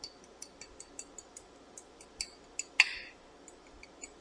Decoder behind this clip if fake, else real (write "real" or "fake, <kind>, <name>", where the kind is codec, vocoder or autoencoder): real